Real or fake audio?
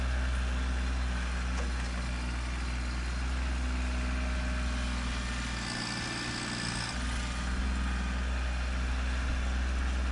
real